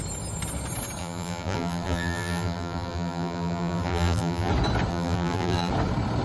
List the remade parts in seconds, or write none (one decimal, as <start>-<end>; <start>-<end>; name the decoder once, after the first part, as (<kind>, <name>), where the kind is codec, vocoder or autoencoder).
1.0-4.5 (vocoder, BigVGAN v2); 4.9-5.7